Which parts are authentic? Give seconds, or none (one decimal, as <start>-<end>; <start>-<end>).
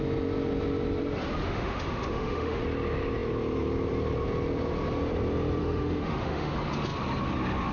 0.0-1.4; 2.6-5.6; 6.5-7.7